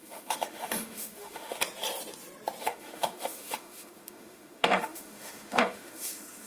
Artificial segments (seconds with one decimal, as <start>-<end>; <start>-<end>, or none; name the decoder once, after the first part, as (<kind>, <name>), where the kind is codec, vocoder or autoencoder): 0.0-1.6 (autoencoder, DAC-VAE); 2.6-6.5